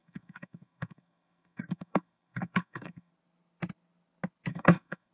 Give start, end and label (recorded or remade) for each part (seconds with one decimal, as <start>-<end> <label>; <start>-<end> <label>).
0.0-3.1 remade; 3.1-4.5 recorded; 4.5-5.1 remade